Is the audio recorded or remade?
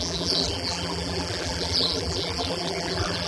remade